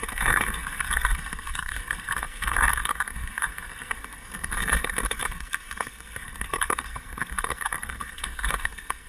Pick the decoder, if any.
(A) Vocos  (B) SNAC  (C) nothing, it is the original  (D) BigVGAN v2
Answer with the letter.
B